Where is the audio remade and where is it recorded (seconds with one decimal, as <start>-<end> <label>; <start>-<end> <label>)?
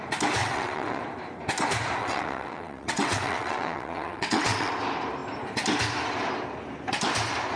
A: 0.0-0.4 recorded; 0.4-1.0 remade; 1.0-2.0 recorded; 2.0-4.7 remade; 4.7-7.6 recorded